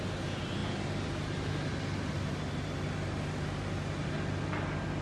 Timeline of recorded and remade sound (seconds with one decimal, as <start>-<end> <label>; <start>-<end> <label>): 0.0-5.0 recorded